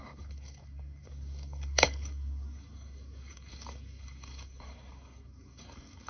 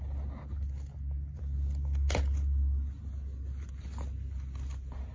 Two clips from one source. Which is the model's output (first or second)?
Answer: first